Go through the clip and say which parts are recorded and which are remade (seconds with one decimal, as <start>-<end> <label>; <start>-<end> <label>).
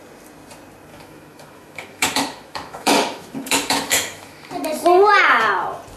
0.0-0.9 recorded; 0.9-4.5 remade; 4.5-6.0 recorded